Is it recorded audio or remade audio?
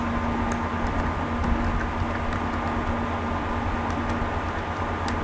recorded